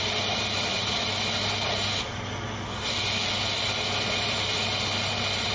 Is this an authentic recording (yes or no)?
yes